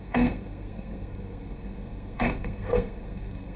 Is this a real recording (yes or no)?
no